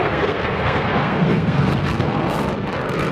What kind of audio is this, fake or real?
fake